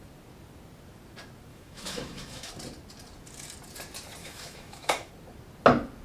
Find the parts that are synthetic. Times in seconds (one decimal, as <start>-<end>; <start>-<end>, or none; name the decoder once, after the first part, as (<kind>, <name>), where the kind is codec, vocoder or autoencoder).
1.5-2.5 (autoencoder, DAC-VAE); 4.2-5.1